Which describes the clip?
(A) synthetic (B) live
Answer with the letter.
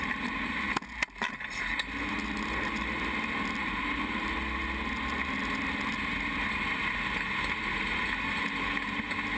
B